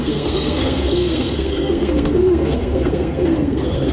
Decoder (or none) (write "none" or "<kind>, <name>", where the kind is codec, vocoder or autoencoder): codec, SNAC